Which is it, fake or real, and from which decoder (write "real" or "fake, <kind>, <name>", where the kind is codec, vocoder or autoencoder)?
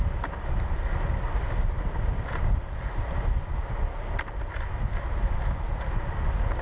real